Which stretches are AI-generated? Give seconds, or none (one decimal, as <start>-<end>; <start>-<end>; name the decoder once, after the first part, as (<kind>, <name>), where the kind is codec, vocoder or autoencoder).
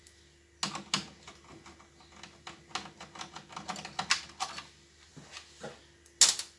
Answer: none